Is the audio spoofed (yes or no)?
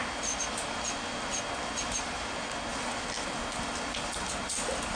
no